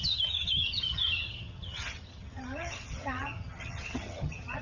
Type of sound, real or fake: fake